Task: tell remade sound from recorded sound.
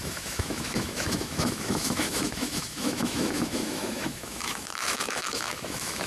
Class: remade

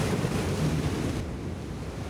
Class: recorded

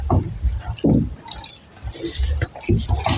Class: recorded